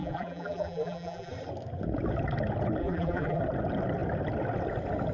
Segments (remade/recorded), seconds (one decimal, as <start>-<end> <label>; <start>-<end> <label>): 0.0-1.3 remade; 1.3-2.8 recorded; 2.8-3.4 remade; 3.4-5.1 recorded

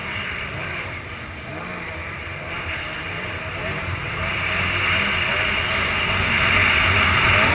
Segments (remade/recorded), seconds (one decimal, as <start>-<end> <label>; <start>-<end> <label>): 0.0-4.5 remade; 4.5-6.6 recorded; 6.6-7.5 remade

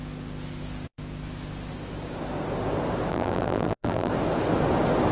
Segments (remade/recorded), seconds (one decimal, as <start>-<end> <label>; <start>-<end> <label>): 0.0-3.1 recorded; 3.1-4.1 remade; 4.1-5.1 recorded

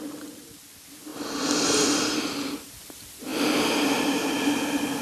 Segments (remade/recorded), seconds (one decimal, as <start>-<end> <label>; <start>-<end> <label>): 0.0-5.0 recorded

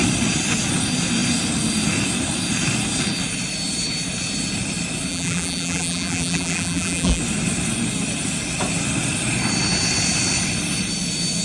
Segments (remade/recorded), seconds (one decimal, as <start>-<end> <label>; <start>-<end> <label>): 0.0-5.1 recorded; 5.1-7.2 remade; 7.2-11.4 recorded

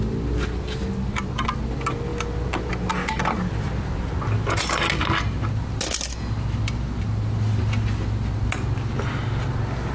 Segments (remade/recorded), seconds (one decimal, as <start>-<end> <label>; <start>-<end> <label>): 0.0-9.9 recorded

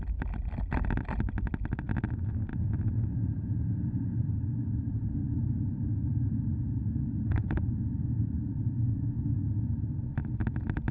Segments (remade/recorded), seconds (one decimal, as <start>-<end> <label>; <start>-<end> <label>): 0.0-5.2 recorded; 5.2-7.8 remade; 7.8-10.9 recorded

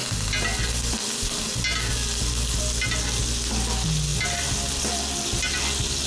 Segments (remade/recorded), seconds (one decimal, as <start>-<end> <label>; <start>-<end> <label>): 0.0-6.1 recorded